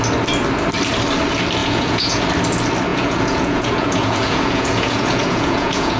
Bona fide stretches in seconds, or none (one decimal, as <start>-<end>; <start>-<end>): 0.0-1.6; 2.2-2.9